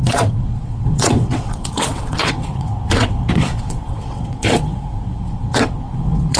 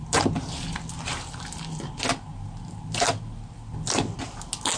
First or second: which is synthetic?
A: first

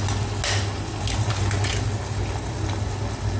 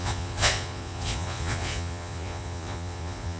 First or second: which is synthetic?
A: second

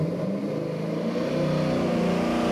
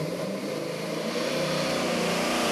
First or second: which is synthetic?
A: second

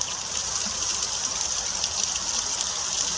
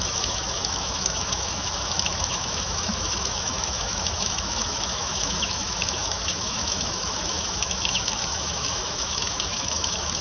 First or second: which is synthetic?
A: second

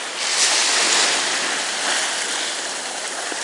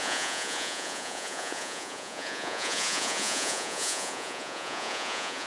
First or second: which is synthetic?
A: second